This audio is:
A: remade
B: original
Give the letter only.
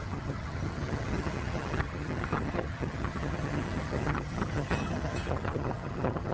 A